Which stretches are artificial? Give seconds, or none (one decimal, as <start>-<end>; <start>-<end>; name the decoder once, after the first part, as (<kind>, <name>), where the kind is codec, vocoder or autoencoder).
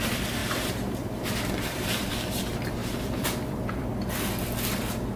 0.4-2.1 (vocoder, BigVGAN v2); 2.8-4.1